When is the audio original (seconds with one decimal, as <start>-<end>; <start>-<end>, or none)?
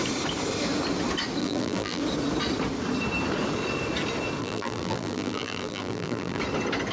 0.0-1.4; 2.0-4.4; 6.4-6.9